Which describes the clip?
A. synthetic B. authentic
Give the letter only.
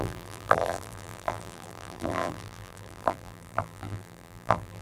A